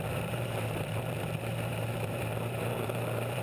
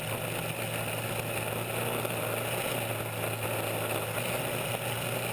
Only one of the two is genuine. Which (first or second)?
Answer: second